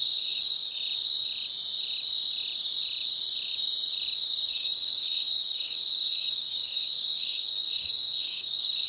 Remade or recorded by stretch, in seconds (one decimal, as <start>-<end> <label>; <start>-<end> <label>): 0.0-0.8 remade; 0.8-4.5 recorded; 4.5-8.9 remade